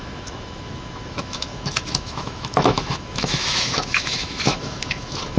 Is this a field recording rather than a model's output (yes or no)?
no